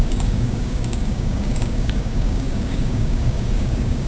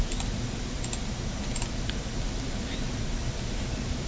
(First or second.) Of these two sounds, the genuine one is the second